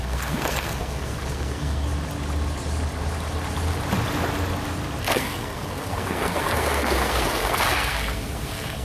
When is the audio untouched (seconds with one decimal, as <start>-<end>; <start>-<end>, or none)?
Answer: 1.9-5.0